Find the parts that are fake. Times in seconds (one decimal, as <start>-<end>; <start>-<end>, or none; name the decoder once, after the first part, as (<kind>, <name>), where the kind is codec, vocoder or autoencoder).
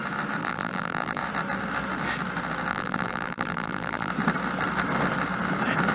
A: 0.4-1.2 (vocoder, BigVGAN v2); 2.7-4.1